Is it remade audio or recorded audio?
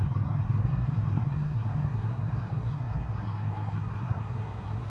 remade